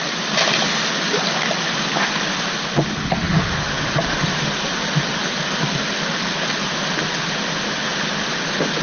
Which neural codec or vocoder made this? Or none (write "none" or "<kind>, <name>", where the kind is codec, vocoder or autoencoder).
none